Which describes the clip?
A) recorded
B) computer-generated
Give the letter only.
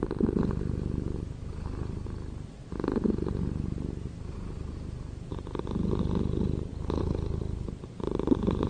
A